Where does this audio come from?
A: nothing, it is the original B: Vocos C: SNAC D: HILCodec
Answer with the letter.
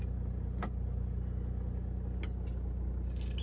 A